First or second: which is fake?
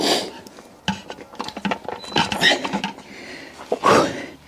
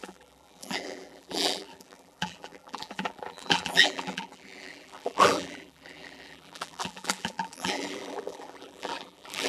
second